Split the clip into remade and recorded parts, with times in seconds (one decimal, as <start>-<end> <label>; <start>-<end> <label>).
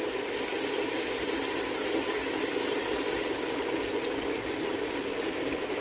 0.0-5.8 recorded